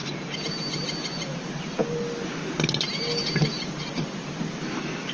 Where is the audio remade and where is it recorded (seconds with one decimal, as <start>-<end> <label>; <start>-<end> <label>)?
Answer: 0.0-5.1 recorded